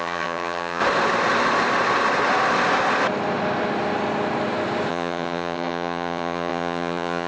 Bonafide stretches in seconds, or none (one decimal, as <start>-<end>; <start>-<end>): 0.8-4.9

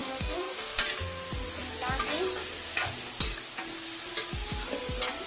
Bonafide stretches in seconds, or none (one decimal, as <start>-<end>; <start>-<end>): 0.8-5.3

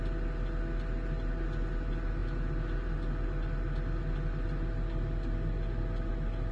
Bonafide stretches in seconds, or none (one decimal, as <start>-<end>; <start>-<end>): 0.0-6.5